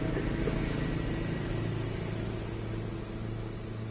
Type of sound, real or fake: real